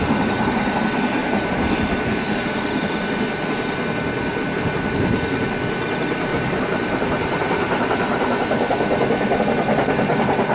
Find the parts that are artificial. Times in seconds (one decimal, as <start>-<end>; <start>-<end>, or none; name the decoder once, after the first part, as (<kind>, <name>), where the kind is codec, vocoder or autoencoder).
1.2-2.8 (vocoder, BigVGAN v2); 4.3-5.2; 6.3-9.4